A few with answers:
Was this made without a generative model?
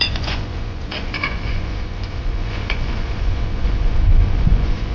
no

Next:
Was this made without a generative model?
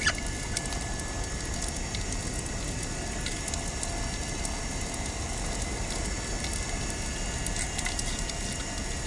yes